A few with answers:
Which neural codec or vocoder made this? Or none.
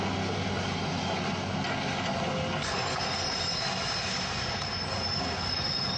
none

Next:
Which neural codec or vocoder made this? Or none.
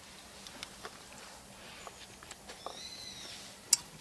none